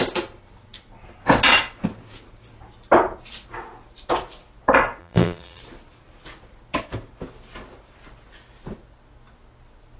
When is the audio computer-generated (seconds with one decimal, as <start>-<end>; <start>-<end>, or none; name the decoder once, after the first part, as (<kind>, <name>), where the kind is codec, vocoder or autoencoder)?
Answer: 5.0-5.6 (vocoder, BigVGAN v2)